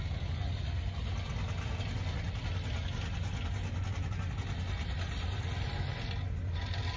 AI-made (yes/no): no